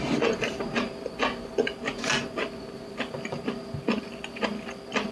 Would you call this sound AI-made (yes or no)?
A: no